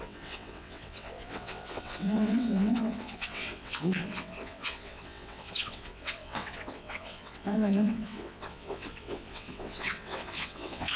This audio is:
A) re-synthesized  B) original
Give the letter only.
A